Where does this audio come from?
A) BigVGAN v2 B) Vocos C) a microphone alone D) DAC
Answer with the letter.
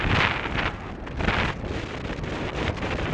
C